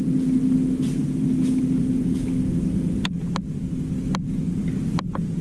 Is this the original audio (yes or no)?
yes